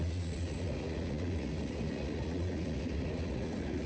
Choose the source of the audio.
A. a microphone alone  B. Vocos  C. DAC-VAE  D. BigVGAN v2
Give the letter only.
B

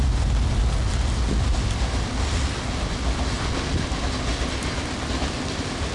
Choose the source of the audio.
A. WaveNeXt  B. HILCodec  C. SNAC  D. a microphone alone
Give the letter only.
D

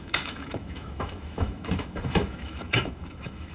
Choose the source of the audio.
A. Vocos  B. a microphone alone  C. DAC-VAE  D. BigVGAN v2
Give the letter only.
C